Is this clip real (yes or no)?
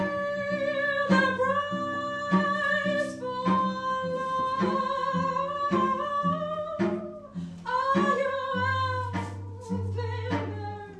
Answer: yes